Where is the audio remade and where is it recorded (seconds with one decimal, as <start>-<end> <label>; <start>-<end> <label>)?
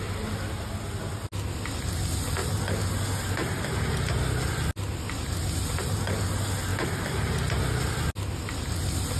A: 0.0-9.2 recorded